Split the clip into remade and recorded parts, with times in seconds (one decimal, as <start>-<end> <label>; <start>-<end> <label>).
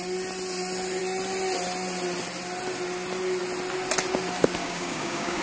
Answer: 0.0-4.6 recorded; 4.6-5.4 remade